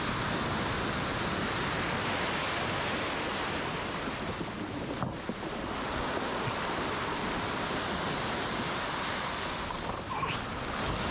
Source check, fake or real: real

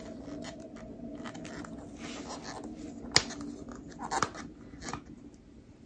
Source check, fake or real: real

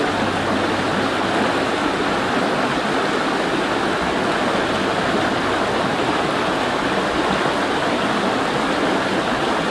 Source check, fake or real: real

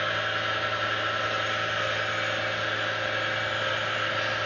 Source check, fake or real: real